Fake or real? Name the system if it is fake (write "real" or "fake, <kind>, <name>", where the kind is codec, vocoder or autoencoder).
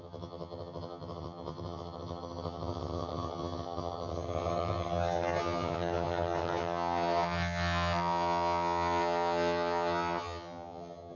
fake, vocoder, HiFi-GAN